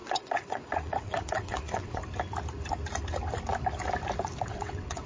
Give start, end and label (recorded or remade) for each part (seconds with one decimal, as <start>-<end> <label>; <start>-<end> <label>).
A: 0.0-2.0 remade; 2.0-4.4 recorded; 4.4-5.1 remade